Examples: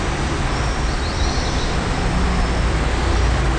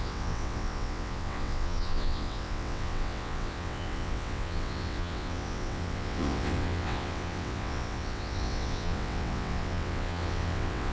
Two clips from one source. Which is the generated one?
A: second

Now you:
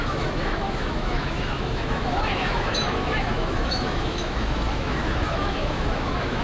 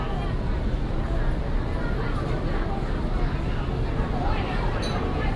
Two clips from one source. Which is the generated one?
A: first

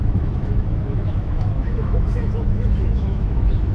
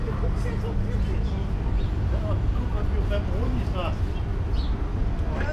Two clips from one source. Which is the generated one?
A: first